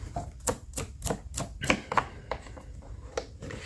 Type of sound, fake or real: real